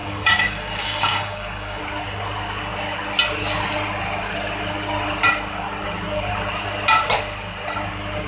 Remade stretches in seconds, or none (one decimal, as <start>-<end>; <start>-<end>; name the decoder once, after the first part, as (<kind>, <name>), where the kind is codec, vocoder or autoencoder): 0.0-1.8 (codec, DAC)